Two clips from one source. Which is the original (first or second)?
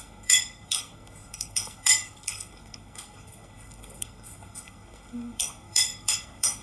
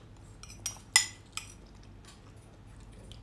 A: second